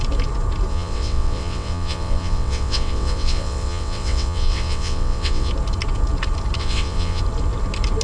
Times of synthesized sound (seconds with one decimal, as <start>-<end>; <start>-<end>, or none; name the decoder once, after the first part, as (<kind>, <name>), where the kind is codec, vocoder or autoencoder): 0.7-5.5 (vocoder, WaveNeXt); 6.6-7.2

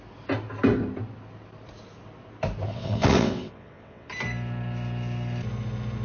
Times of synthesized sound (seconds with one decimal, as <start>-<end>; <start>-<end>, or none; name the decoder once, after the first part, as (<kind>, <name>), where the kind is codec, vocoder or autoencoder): 2.7-4.1 (vocoder, WaveNeXt)

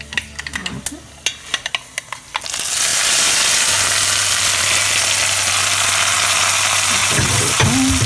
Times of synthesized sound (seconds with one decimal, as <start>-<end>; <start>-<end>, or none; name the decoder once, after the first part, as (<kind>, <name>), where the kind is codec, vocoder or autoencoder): 7.0-7.5 (vocoder, WaveNeXt)

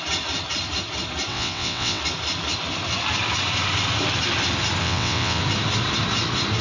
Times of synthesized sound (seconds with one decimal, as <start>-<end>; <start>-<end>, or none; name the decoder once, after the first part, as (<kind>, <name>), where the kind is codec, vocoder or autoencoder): 1.3-2.0 (vocoder, WaveNeXt); 4.8-5.4

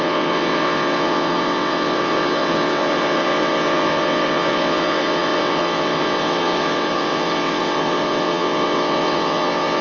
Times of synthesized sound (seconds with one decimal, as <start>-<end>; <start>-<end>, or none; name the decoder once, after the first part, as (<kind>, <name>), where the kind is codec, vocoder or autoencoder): 0.0-9.8 (vocoder, WaveNeXt)

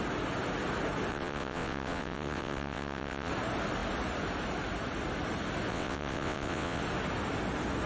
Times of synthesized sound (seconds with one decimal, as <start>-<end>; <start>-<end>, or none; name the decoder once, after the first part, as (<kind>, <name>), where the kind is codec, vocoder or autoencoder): 1.1-3.3 (vocoder, WaveNeXt); 5.7-6.8